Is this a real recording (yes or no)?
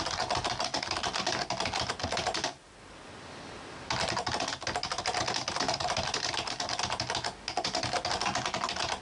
yes